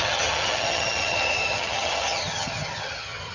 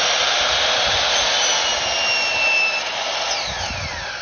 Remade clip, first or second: first